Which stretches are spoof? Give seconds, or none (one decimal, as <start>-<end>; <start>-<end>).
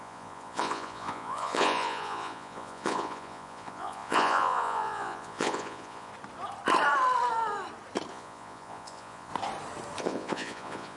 0.0-6.1; 8.1-9.3; 10.0-11.0